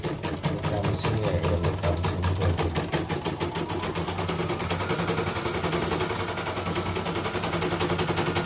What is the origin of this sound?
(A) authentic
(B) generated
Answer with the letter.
A